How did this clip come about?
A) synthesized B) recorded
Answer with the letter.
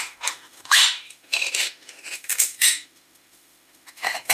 A